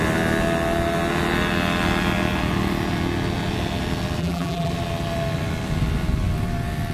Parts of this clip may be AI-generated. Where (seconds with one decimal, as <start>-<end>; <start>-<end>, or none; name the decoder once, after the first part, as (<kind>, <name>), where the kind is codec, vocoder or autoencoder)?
4.2-4.7 (vocoder, BigVGAN v2)